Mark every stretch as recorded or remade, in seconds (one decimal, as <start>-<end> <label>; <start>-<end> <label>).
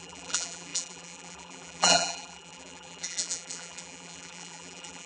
0.0-5.1 remade